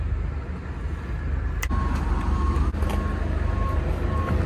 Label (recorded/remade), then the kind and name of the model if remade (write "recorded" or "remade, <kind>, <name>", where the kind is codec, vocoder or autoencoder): recorded